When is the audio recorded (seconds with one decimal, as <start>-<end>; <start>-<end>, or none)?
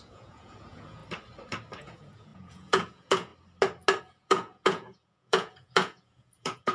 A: 1.0-1.8; 3.3-4.0